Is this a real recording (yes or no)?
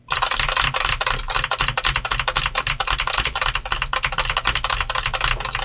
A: yes